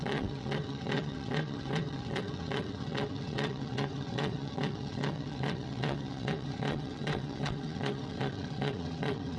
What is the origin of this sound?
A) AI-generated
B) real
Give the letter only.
A